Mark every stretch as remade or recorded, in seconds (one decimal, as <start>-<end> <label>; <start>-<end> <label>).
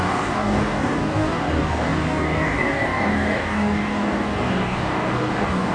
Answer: 0.0-5.7 remade